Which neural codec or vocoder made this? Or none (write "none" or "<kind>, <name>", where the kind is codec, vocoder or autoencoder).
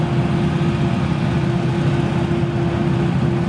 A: none